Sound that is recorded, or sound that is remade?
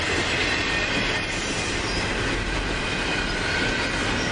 recorded